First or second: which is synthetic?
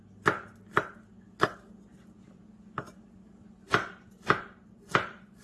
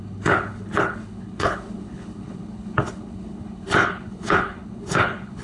second